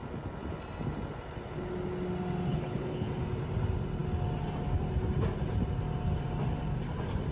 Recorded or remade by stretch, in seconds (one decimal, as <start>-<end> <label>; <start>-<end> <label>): 0.0-2.5 recorded; 2.5-3.1 remade; 3.1-7.3 recorded